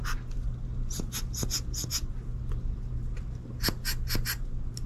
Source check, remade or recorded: recorded